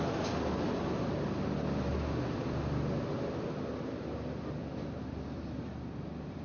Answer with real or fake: real